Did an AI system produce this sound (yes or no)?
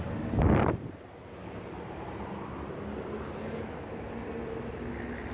no